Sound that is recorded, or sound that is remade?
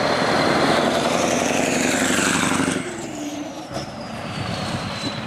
remade